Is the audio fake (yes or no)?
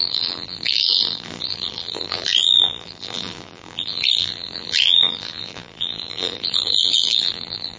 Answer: yes